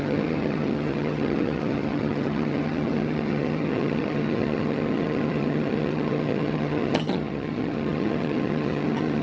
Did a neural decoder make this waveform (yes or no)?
yes